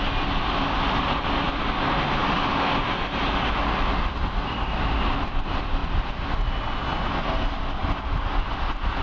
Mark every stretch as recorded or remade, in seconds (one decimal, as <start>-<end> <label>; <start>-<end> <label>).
0.0-9.0 recorded